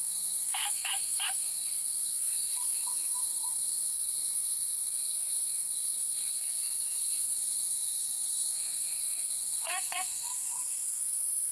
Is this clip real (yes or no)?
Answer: no